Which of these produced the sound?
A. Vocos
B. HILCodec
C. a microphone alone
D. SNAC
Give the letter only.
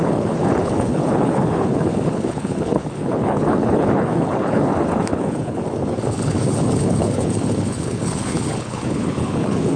B